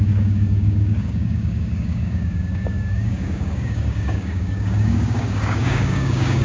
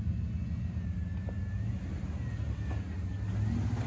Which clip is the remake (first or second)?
first